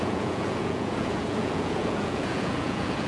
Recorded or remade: remade